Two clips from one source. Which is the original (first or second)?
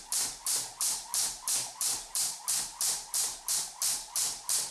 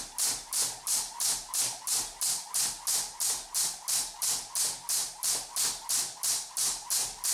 second